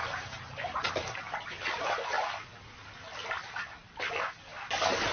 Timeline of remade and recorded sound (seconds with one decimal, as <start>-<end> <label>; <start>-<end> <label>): 0.0-1.2 remade; 1.2-5.1 recorded